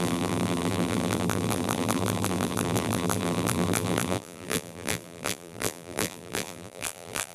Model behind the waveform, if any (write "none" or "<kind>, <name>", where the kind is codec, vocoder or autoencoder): vocoder, BigVGAN v2